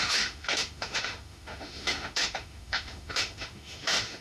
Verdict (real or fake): fake